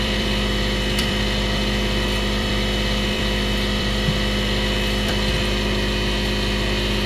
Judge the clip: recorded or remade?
remade